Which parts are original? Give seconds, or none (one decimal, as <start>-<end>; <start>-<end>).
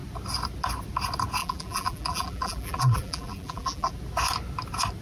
0.0-1.4; 3.9-5.0